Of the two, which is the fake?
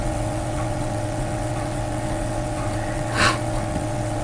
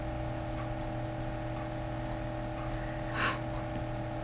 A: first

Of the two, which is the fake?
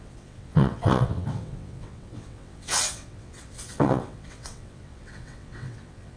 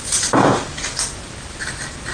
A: first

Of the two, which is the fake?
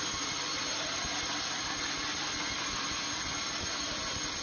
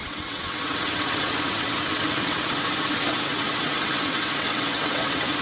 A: second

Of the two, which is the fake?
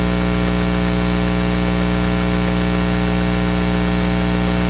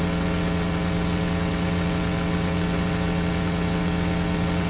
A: second